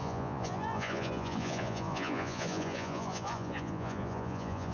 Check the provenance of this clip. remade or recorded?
remade